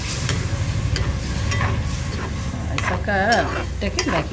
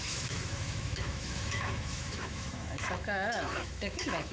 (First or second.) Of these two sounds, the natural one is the first